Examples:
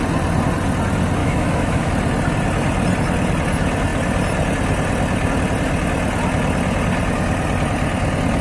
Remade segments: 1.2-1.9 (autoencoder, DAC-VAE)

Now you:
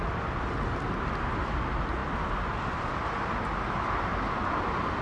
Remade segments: none

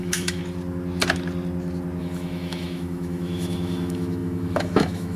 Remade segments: 0.0-0.4 (autoencoder, DAC-VAE); 2.0-5.2

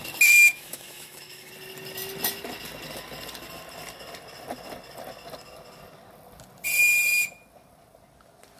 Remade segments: 0.4-1.5 (autoencoder, DAC-VAE)

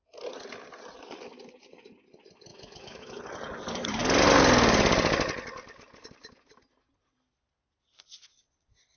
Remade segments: 2.5-3.2 (autoencoder, DAC-VAE)

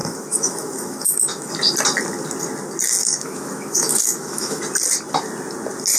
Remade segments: 0.0-1.5 (autoencoder, DAC-VAE); 3.0-4.6